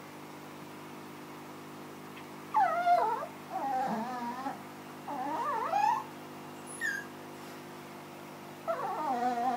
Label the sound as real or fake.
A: fake